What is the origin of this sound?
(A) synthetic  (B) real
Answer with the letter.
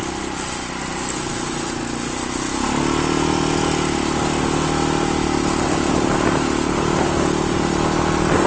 B